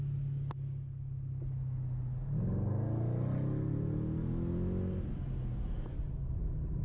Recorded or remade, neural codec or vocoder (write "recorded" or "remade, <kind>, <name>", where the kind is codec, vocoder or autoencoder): recorded